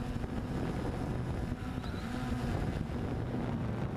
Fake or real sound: real